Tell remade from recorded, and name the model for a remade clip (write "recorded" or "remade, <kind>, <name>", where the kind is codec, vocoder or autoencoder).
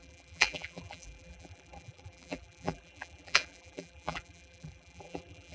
remade, vocoder, BigVGAN v2